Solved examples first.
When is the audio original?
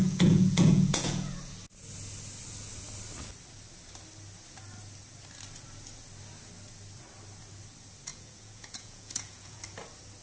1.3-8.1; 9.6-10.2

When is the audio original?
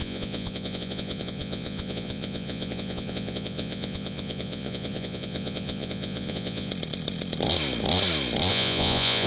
6.7-8.5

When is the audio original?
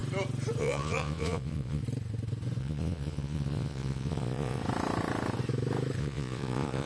0.0-0.6; 1.8-2.6; 4.6-6.0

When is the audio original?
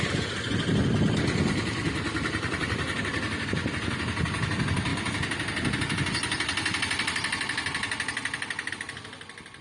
0.0-9.6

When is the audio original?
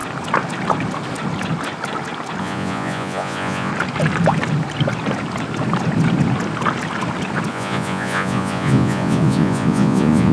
0.0-2.4; 3.7-7.5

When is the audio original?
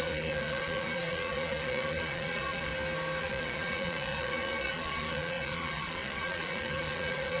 2.7-3.2